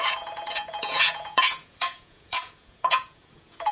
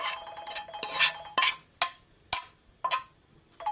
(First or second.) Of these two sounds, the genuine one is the second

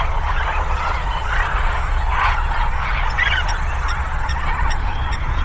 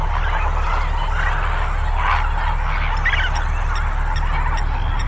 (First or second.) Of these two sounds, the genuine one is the second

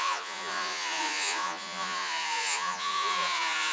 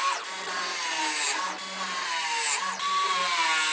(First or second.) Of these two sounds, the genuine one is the second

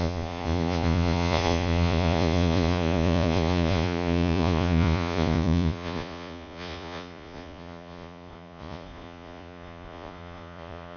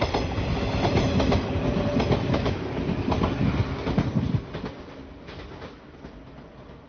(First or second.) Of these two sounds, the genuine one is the second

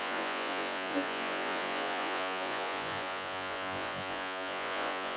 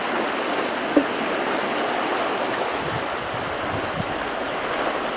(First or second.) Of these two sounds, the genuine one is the second